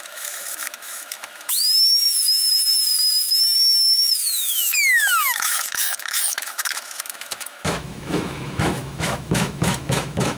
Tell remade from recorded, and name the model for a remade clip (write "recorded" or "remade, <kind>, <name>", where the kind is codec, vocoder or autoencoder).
remade, autoencoder, DAC-VAE